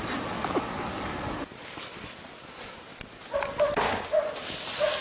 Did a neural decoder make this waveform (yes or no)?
no